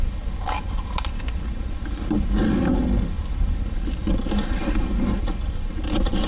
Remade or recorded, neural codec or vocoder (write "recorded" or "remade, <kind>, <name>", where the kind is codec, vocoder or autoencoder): recorded